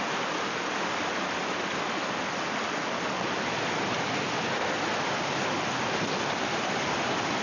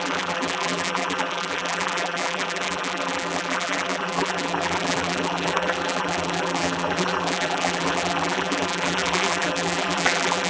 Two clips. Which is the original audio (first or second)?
first